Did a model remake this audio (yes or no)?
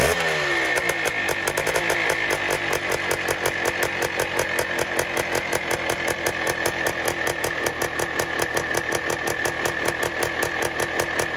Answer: no